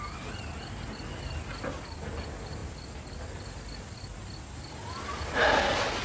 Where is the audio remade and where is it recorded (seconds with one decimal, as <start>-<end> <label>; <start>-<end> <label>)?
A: 0.0-6.0 recorded